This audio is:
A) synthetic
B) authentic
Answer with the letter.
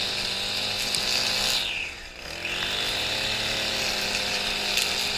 B